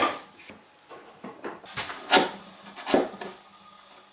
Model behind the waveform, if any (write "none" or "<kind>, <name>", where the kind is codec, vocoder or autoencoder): none